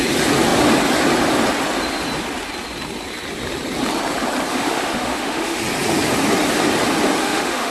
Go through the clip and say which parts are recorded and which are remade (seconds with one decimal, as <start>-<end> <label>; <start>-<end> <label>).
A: 0.0-4.5 recorded; 4.5-5.6 remade; 5.6-7.2 recorded; 7.2-7.7 remade